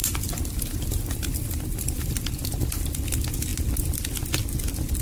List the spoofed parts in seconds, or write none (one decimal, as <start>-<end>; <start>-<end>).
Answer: 0.0-3.0